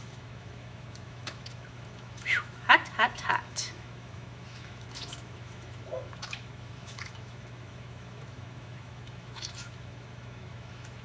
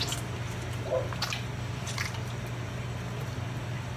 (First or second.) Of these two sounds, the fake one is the first